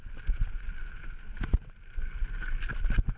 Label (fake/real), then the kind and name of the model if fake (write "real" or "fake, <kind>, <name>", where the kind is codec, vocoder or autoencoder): real